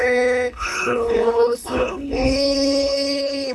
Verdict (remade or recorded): remade